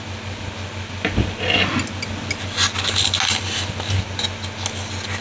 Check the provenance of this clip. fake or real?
real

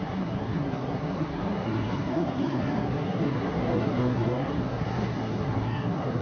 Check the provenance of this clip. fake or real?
fake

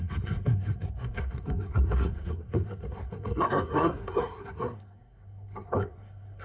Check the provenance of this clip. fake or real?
fake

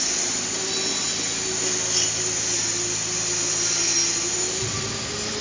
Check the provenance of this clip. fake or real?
real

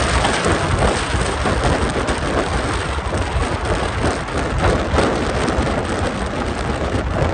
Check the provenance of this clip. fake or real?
real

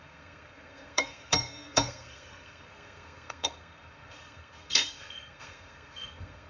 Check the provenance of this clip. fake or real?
fake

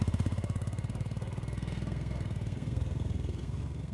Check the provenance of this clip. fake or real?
fake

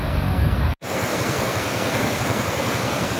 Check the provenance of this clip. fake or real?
fake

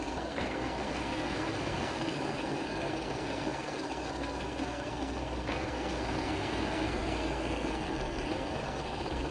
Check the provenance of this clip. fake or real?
fake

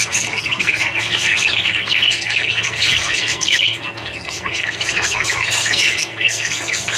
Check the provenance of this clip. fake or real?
fake